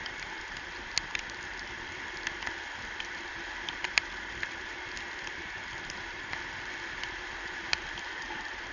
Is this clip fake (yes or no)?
no